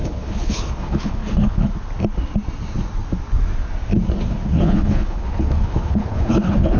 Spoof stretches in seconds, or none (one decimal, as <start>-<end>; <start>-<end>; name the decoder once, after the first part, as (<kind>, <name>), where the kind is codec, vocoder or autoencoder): 0.0-1.7 (codec, HILCodec); 4.3-6.8

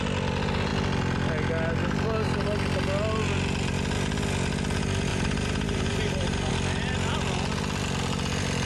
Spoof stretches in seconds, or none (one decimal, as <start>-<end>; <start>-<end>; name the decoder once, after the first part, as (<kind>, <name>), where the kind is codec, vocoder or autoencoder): 5.1-6.5 (vocoder, BigVGAN v2)

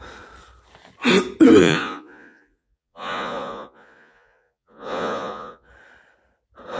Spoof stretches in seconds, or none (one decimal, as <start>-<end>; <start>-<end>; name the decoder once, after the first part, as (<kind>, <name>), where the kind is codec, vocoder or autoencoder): 1.6-5.7 (vocoder, Vocos)

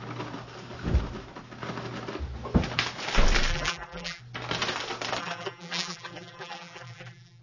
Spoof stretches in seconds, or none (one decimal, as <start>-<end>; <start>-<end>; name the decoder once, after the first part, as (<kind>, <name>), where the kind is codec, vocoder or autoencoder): 3.5-4.2 (vocoder, BigVGAN v2); 5.2-7.4